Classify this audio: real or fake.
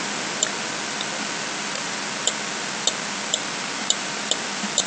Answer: real